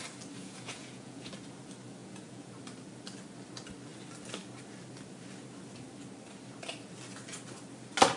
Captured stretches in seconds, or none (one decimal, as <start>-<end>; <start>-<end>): 0.0-0.4; 1.3-2.0; 2.5-8.2

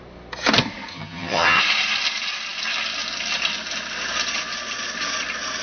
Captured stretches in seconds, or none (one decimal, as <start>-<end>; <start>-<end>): 0.0-0.9; 1.6-5.6